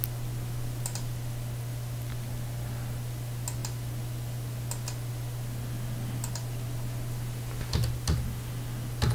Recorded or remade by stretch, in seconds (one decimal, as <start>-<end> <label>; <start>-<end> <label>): 0.0-9.1 recorded